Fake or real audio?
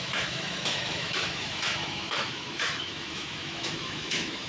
fake